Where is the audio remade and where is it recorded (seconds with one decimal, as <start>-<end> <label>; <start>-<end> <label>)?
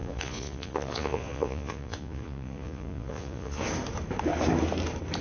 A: 0.0-3.6 remade; 3.6-5.2 recorded